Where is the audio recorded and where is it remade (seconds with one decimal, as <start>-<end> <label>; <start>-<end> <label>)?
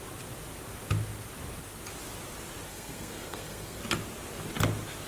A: 0.0-2.7 recorded; 2.7-3.8 remade; 3.8-5.1 recorded